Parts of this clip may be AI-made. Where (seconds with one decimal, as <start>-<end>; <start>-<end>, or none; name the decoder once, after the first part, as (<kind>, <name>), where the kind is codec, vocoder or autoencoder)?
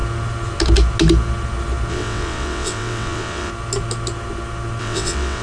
1.9-3.5 (vocoder, WaveNeXt); 4.8-5.4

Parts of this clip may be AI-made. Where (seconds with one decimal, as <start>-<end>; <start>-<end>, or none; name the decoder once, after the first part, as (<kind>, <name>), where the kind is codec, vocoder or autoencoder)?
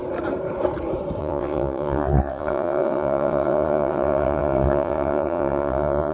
1.2-6.1 (vocoder, WaveNeXt)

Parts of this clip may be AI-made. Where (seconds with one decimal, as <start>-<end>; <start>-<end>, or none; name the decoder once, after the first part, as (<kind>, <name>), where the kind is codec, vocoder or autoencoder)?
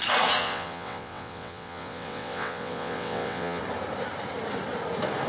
0.4-3.6 (vocoder, WaveNeXt)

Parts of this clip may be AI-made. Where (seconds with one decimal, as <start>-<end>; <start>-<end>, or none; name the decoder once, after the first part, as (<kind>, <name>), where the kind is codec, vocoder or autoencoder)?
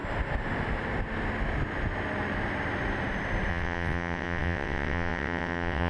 3.5-5.9 (vocoder, WaveNeXt)